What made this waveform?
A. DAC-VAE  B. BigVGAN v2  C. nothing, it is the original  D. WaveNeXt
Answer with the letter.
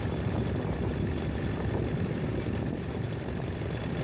C